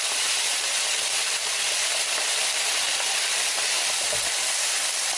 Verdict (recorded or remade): recorded